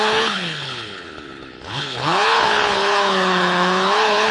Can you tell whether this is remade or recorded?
remade